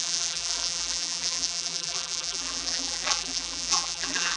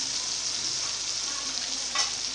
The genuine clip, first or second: second